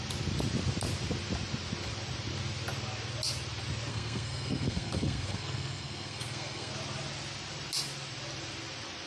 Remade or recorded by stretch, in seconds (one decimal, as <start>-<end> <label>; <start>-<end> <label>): 0.0-3.9 recorded; 3.9-6.7 remade; 6.7-9.1 recorded